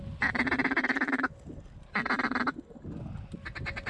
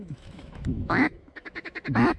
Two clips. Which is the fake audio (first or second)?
second